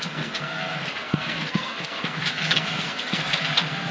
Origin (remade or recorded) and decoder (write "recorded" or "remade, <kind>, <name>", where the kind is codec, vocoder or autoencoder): remade, codec, SNAC